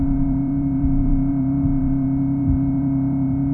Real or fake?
fake